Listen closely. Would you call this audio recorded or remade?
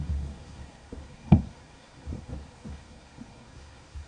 remade